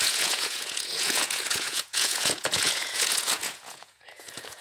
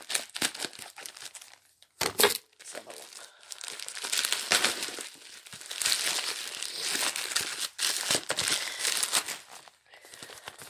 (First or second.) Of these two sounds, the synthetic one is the first